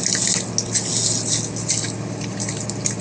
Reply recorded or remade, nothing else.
recorded